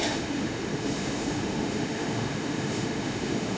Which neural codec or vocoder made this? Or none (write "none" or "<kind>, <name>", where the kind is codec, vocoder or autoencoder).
autoencoder, DAC-VAE